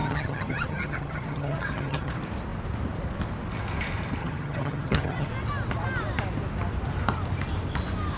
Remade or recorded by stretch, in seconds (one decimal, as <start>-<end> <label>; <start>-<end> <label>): 0.0-2.1 remade; 2.1-4.2 recorded; 4.2-5.3 remade; 5.3-8.2 recorded

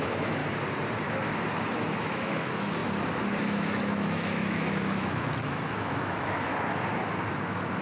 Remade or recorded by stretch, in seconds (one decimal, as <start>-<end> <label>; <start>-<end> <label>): 0.0-0.4 remade; 0.4-2.0 recorded; 2.0-2.8 remade; 2.8-3.4 recorded; 3.4-6.5 remade; 6.5-7.3 recorded; 7.3-7.8 remade

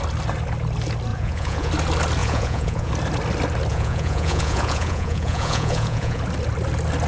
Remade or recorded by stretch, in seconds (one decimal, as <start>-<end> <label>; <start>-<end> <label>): 0.0-1.1 recorded; 1.1-1.7 remade; 1.7-2.2 recorded; 2.2-2.9 remade; 2.9-3.7 recorded; 3.7-6.2 remade; 6.2-7.1 recorded

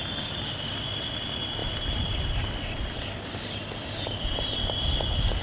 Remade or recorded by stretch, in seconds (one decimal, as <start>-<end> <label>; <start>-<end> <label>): 0.0-5.4 recorded

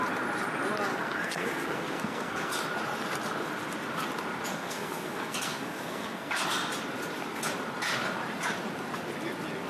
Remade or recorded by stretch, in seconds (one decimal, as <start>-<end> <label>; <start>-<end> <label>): 0.0-0.9 recorded; 0.9-2.5 remade; 2.5-4.5 recorded; 4.5-6.3 remade; 6.3-9.7 recorded

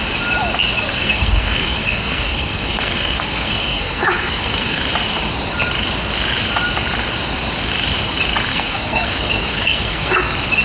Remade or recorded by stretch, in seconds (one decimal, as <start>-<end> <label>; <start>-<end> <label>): 0.0-0.9 recorded; 0.9-4.8 remade; 4.8-8.5 recorded; 8.5-10.2 remade; 10.2-10.6 recorded

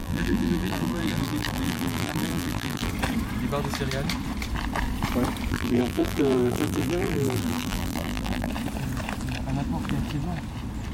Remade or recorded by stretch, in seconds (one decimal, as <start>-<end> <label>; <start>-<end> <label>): 0.0-2.9 remade; 2.9-5.5 recorded; 5.5-8.5 remade; 8.5-10.9 recorded

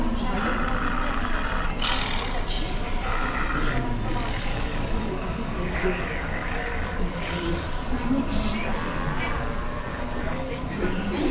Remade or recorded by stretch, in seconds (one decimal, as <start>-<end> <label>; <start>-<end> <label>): 0.0-4.5 recorded; 4.5-7.8 remade; 7.8-9.9 recorded; 9.9-10.7 remade; 10.7-11.3 recorded